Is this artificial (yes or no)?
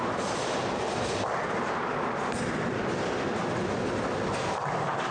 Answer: no